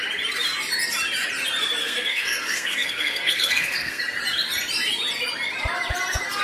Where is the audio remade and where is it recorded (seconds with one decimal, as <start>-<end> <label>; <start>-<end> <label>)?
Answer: 0.0-1.8 recorded; 1.8-4.0 remade; 4.0-6.4 recorded